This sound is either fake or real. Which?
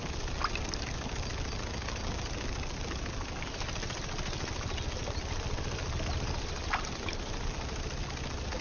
real